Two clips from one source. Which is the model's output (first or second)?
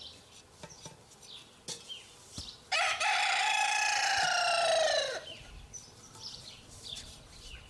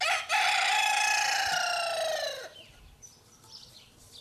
first